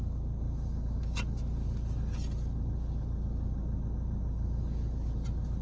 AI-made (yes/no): no